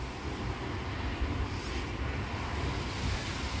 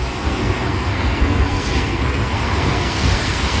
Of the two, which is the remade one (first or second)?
second